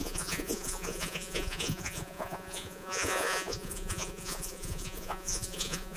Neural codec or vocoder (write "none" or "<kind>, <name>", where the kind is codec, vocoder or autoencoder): vocoder, Vocos